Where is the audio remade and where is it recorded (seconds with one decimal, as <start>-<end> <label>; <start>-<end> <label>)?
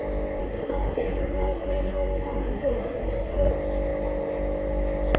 0.0-0.4 recorded; 0.4-3.5 remade; 3.5-5.2 recorded